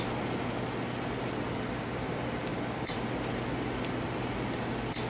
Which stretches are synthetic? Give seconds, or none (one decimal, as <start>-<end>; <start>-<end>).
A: 2.5-3.0

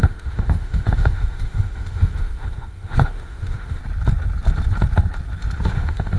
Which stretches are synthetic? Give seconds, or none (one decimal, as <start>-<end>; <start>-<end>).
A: 0.0-3.8; 5.6-6.2

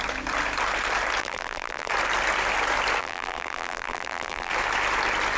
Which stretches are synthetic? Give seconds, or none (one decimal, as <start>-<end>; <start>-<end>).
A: 1.2-1.9; 3.0-4.5

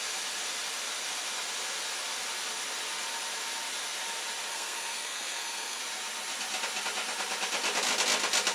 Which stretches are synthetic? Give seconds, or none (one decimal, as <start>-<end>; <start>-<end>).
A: 4.5-5.8

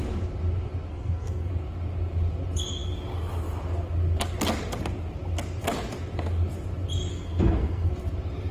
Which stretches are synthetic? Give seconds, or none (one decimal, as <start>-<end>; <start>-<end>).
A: 0.9-1.5; 7.1-7.9